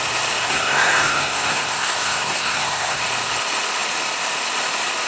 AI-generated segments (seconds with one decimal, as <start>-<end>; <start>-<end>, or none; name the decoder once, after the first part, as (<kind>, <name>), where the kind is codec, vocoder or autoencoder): 0.4-3.0 (codec, SNAC)